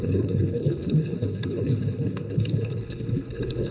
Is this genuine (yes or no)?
no